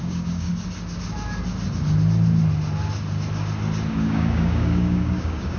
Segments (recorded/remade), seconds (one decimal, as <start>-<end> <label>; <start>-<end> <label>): 0.0-0.5 remade; 0.5-3.9 recorded; 3.9-5.6 remade